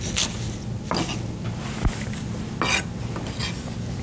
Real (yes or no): yes